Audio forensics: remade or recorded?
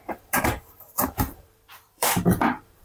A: remade